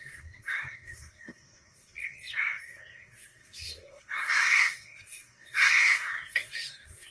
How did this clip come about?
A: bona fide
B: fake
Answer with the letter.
B